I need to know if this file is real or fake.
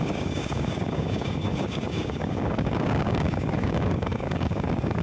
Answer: fake